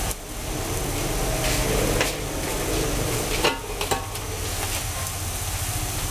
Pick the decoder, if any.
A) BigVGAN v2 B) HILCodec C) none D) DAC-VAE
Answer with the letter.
C